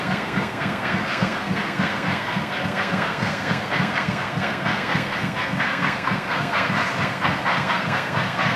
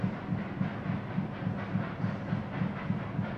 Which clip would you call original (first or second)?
second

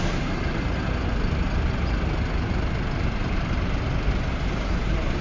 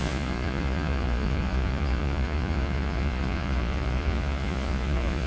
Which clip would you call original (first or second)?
first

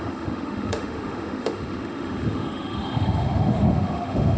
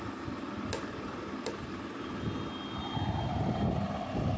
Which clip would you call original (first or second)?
second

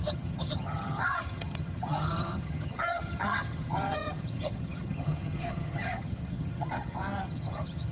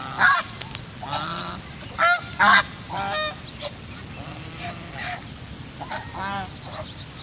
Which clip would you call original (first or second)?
second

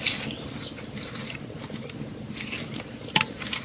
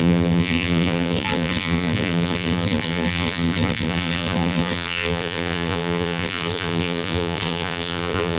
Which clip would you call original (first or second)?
first